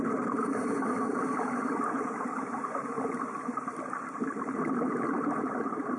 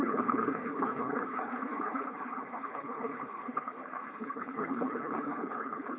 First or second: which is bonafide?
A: first